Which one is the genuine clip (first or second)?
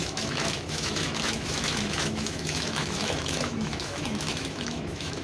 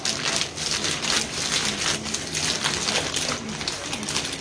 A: second